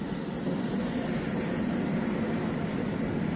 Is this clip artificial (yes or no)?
yes